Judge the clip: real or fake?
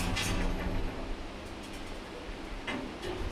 real